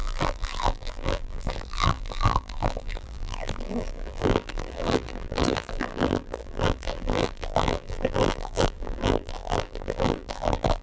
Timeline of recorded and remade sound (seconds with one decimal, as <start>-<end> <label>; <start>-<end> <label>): 0.0-10.8 remade